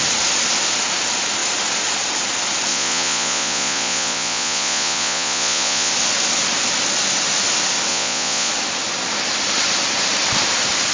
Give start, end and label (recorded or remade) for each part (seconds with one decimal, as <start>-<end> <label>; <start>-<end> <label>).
0.0-2.7 recorded; 2.7-5.9 remade; 5.9-7.9 recorded; 7.9-8.5 remade; 8.5-10.9 recorded

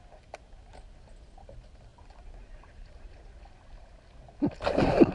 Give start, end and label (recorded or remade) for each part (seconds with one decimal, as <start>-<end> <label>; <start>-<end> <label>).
0.0-5.1 recorded

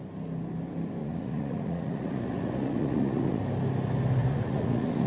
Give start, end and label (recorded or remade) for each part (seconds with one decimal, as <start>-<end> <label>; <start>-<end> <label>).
0.0-1.0 recorded; 1.0-3.4 remade; 3.4-4.2 recorded; 4.2-5.1 remade

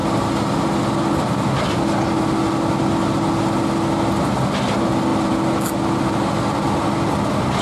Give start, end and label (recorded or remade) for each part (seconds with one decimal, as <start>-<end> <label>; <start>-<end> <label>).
0.0-7.6 recorded

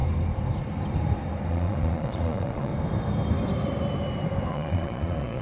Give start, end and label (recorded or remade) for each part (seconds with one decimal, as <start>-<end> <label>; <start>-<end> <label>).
0.0-1.5 recorded; 1.5-2.7 remade; 2.7-4.5 recorded; 4.5-5.4 remade